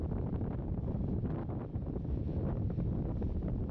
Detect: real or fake real